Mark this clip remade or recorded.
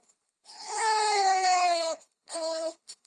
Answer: remade